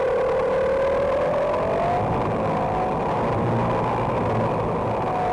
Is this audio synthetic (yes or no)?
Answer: no